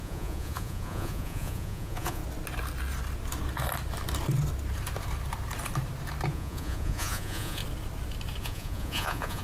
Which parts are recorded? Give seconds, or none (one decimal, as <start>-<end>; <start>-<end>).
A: 2.2-6.3; 7.6-8.4